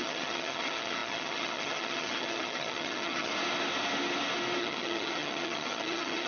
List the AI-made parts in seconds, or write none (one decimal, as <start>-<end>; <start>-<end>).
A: 0.0-3.3; 4.6-6.3